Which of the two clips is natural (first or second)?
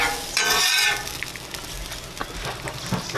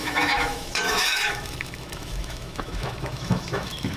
first